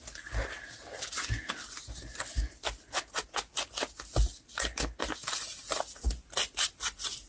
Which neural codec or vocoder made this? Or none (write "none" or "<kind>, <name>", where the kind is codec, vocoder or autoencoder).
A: none